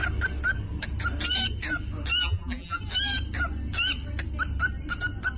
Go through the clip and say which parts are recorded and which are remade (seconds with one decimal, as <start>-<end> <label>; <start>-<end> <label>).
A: 0.0-2.2 recorded; 2.2-2.8 remade; 2.8-5.4 recorded